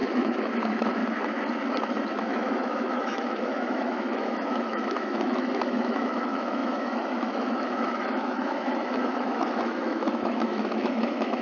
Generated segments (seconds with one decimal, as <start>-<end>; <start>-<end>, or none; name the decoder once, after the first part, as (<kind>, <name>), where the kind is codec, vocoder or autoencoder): 0.0-1.0 (autoencoder, DAC-VAE); 2.1-11.4